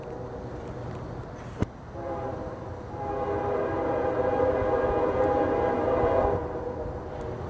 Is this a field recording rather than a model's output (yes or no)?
yes